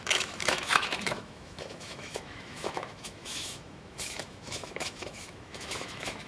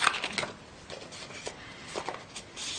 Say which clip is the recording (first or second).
second